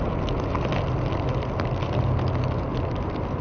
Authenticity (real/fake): real